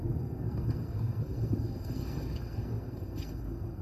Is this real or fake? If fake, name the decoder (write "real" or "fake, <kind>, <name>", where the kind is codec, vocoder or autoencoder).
fake, codec, SNAC